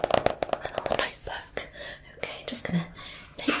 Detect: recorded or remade recorded